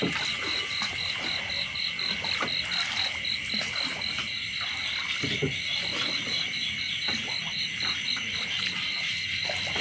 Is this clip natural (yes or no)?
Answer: yes